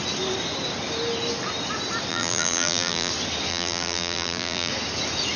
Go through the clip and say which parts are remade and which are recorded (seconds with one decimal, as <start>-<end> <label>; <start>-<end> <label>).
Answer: 0.0-2.1 recorded; 2.1-3.1 remade; 3.1-3.5 recorded; 3.5-4.7 remade; 4.7-5.4 recorded